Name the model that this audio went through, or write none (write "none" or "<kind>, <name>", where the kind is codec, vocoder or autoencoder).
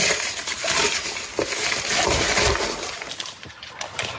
none